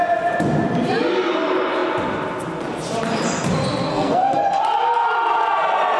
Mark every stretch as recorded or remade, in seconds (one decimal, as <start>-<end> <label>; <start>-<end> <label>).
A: 0.0-3.9 recorded; 3.9-4.6 remade; 4.6-6.0 recorded